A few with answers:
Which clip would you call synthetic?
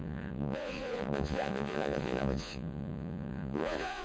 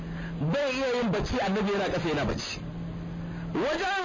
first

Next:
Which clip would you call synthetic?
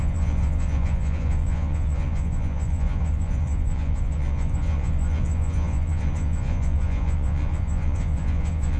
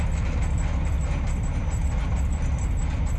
first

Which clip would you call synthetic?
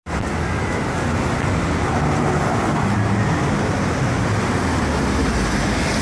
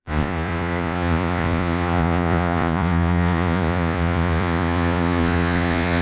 second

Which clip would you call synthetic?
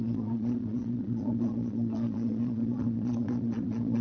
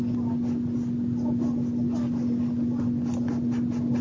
first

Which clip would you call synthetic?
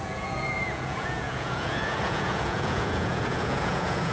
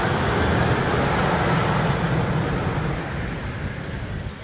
first